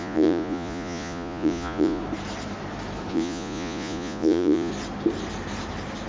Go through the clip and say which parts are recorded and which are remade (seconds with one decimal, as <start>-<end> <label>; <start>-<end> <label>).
0.0-2.0 remade; 2.0-3.1 recorded; 3.1-4.7 remade; 4.7-6.1 recorded